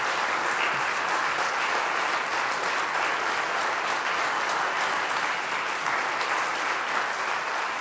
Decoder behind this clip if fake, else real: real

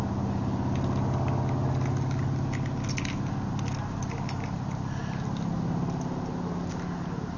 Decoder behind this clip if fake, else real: real